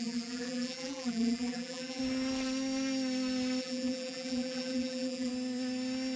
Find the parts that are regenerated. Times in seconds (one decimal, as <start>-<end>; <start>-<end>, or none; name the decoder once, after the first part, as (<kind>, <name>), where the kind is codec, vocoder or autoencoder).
0.0-2.0 (vocoder, BigVGAN v2); 3.6-5.3